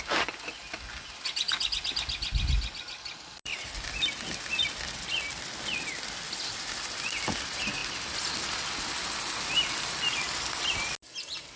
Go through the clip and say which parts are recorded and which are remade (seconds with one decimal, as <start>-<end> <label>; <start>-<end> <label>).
0.0-11.6 recorded